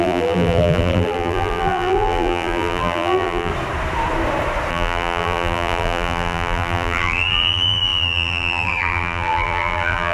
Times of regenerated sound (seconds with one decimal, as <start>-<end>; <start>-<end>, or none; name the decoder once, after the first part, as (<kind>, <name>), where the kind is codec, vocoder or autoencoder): 0.0-3.5 (vocoder, BigVGAN v2); 4.7-10.1